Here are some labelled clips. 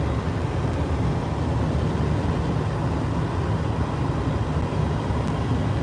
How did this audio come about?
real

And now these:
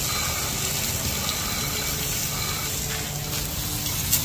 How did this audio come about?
real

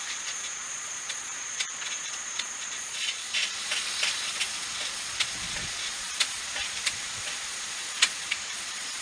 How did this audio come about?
fake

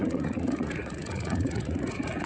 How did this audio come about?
fake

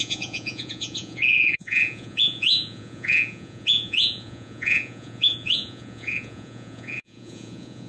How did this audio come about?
fake